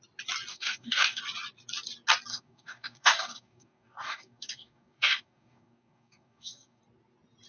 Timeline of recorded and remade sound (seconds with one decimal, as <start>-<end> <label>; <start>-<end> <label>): 0.0-0.5 recorded; 0.5-1.2 remade; 1.2-2.3 recorded; 2.3-6.8 remade; 6.8-7.5 recorded